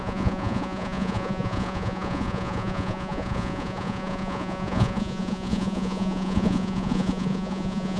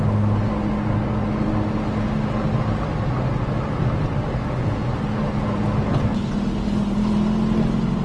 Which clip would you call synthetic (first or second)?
first